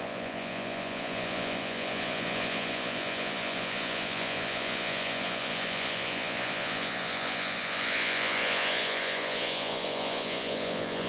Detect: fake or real fake